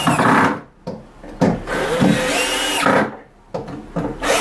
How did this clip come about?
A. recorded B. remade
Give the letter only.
B